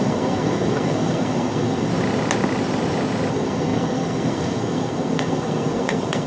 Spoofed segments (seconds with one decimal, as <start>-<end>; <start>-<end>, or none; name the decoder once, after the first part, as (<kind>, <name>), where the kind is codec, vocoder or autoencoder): 0.0-1.9 (codec, SNAC); 3.3-6.3